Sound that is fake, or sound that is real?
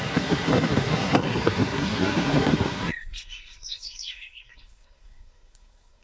fake